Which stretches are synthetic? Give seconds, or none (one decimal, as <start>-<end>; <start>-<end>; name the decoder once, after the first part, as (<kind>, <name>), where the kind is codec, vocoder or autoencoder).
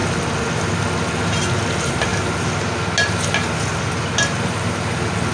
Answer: none